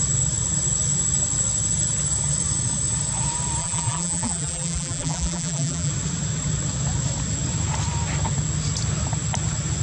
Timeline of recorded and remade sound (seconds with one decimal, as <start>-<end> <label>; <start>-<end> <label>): 0.0-3.6 recorded; 3.6-5.9 remade; 5.9-9.8 recorded